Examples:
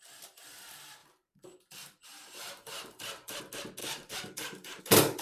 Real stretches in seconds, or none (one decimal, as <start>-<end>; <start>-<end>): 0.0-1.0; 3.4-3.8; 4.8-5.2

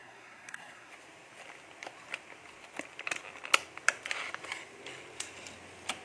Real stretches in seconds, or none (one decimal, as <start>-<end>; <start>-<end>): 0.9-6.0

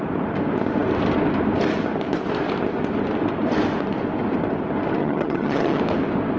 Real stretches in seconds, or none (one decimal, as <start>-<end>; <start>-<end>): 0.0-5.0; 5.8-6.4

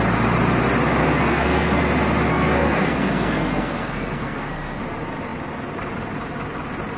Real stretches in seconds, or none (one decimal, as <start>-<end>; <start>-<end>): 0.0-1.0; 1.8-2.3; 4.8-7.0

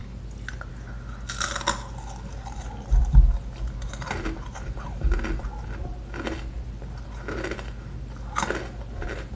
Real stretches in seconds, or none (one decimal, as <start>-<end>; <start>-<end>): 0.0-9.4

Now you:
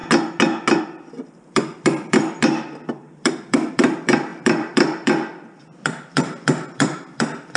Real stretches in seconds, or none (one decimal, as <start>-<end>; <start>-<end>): 0.0-0.8